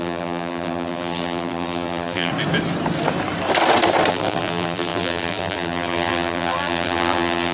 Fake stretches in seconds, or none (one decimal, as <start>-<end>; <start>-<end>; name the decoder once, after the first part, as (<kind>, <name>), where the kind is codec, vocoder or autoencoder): 0.0-2.3 (vocoder, BigVGAN v2); 4.1-7.5